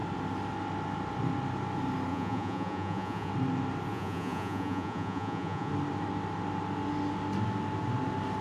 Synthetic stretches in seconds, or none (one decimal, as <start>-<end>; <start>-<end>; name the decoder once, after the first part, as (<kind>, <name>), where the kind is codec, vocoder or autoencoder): 2.1-3.3 (vocoder, Vocos); 3.9-5.7